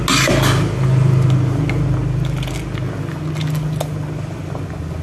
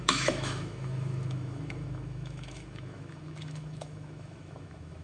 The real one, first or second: first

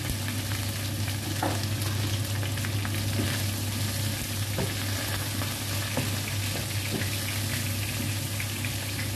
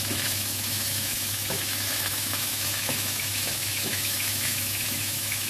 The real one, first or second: first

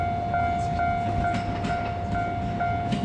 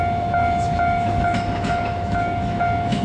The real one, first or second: first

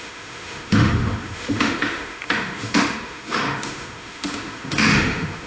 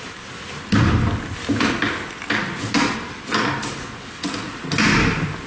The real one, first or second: second